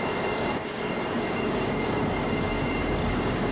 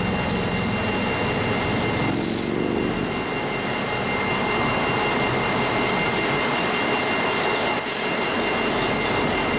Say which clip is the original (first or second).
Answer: second